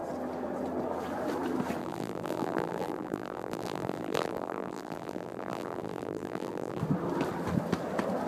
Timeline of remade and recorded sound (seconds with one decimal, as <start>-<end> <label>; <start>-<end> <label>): 0.0-1.8 recorded; 1.8-6.8 remade; 6.8-8.3 recorded